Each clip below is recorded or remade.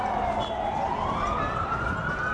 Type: recorded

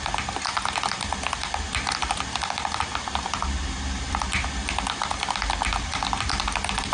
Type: remade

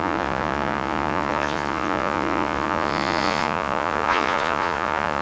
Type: remade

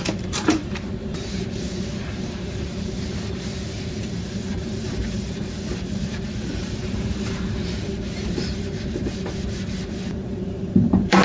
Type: remade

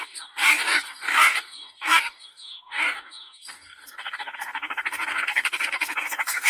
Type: remade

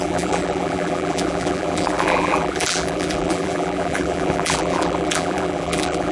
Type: remade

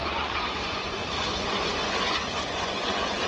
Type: remade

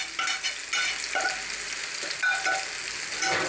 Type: recorded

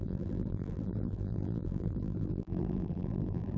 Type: remade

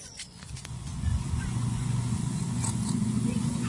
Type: remade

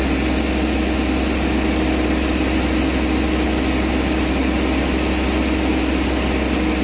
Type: recorded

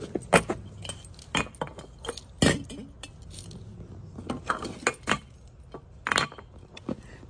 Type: recorded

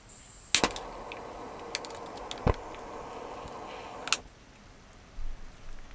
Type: recorded